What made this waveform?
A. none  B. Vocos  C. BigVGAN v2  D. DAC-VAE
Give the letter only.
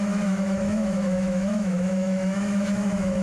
D